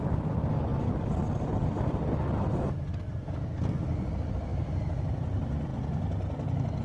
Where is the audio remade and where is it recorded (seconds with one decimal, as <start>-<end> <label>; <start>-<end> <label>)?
0.0-4.5 recorded; 4.5-5.0 remade; 5.0-6.8 recorded